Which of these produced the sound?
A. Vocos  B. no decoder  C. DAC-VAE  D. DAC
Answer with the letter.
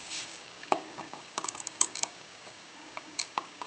D